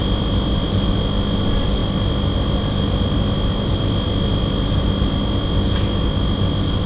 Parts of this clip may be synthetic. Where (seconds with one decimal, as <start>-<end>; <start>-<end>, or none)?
0.0-0.9